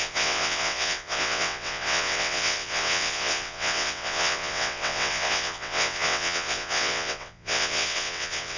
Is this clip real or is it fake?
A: fake